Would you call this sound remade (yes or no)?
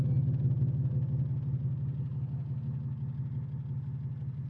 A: no